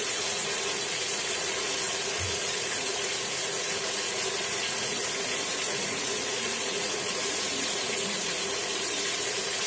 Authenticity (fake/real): fake